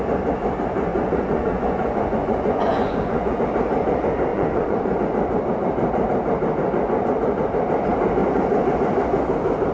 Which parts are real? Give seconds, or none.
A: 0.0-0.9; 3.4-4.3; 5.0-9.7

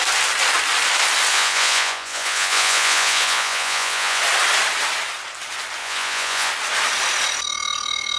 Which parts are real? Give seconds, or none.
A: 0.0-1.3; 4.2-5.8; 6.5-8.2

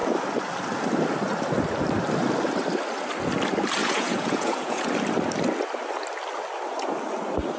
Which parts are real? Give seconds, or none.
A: 0.0-3.8; 4.9-7.6

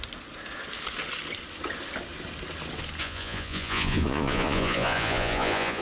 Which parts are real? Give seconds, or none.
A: 0.0-3.0